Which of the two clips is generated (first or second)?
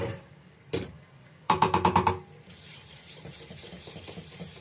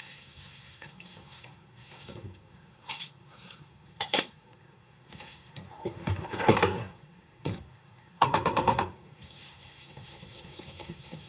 second